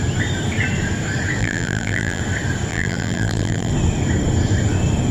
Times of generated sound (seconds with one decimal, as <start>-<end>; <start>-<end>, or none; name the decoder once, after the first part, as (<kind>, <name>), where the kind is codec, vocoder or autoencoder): 1.4-2.2 (vocoder, BigVGAN v2); 2.7-3.7